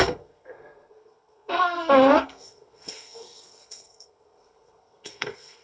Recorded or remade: remade